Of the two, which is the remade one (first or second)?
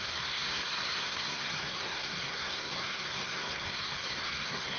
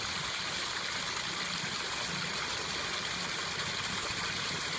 first